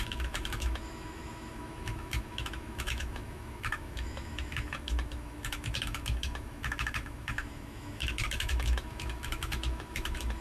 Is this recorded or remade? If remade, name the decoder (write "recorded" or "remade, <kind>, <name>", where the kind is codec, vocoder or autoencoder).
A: remade, autoencoder, DAC-VAE